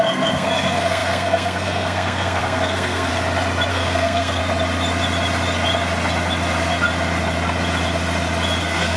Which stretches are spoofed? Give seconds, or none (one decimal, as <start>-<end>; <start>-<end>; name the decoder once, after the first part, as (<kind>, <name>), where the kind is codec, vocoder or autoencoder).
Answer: 0.0-3.1 (codec, SNAC); 3.7-4.4; 8.6-9.0